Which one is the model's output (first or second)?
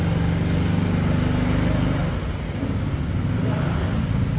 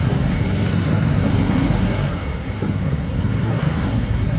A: second